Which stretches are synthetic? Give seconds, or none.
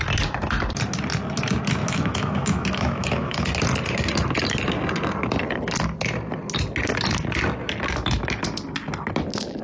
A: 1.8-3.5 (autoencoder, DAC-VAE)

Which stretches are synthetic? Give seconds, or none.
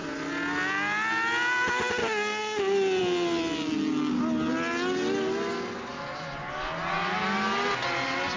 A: none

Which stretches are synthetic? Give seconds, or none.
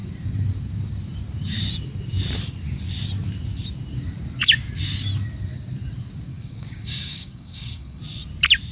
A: 6.3-8.0 (codec, DAC)